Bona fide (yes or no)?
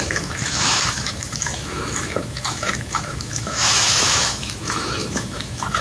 no